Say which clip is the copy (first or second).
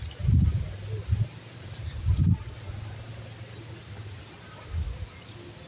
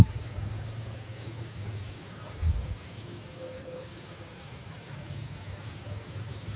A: second